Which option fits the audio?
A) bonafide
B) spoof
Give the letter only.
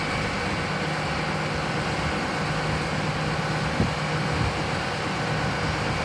A